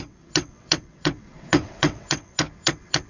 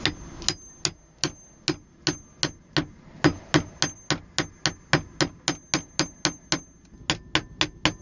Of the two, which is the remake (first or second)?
first